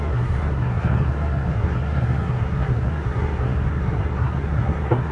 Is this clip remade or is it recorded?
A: remade